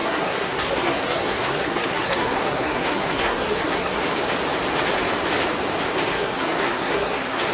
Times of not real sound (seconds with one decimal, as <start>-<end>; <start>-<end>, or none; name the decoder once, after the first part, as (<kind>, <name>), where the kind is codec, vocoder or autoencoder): 0.0-4.0 (codec, SNAC); 6.1-7.5